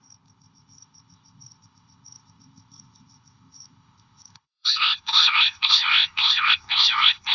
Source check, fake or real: fake